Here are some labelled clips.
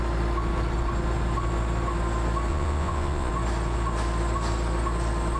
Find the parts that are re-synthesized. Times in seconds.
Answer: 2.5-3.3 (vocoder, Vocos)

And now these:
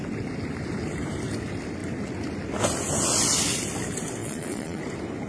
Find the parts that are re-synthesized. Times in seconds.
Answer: 4.2-4.8 (vocoder, Vocos)